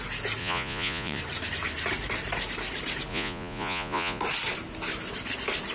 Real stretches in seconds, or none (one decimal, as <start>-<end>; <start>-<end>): 0.0-0.4; 1.2-3.1; 4.2-5.7